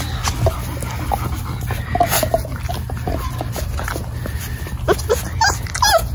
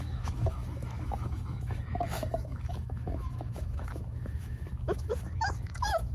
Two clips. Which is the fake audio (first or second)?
second